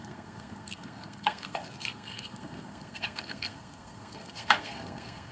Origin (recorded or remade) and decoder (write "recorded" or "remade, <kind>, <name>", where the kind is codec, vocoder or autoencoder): remade, codec, SNAC